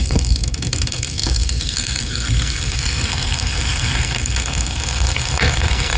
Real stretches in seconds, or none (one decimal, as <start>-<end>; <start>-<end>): none